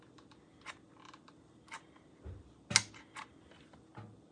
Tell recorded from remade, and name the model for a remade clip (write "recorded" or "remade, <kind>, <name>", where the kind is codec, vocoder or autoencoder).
recorded